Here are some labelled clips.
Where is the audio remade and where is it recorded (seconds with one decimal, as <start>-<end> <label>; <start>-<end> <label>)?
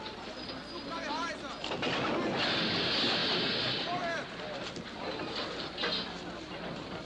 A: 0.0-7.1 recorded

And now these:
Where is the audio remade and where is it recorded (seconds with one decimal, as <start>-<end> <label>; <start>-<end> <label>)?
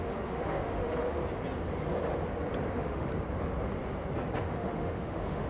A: 0.0-1.2 remade; 1.2-2.7 recorded; 2.7-3.1 remade; 3.1-4.4 recorded; 4.4-5.5 remade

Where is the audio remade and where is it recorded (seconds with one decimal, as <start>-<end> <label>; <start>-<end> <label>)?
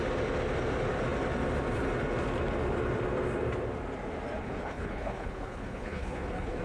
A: 0.0-4.4 recorded; 4.4-6.6 remade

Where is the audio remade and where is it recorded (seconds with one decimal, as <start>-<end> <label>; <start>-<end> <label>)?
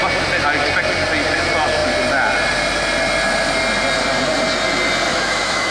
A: 0.0-5.1 recorded; 5.1-5.7 remade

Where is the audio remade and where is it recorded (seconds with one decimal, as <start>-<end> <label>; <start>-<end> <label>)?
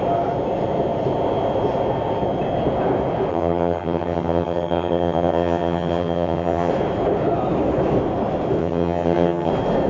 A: 0.0-3.3 recorded; 3.3-6.7 remade; 6.7-8.6 recorded; 8.6-9.5 remade; 9.5-9.9 recorded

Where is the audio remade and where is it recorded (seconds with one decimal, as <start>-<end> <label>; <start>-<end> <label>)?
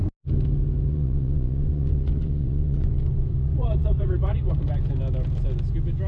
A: 0.0-0.9 recorded; 0.9-4.6 remade; 4.6-6.1 recorded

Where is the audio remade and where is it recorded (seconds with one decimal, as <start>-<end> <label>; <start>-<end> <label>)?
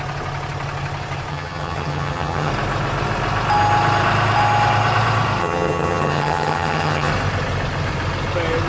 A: 0.0-1.3 recorded; 1.3-2.5 remade; 2.5-5.4 recorded; 5.4-7.1 remade; 7.1-8.7 recorded